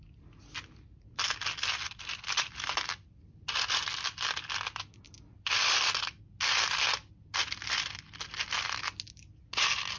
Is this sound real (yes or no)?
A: yes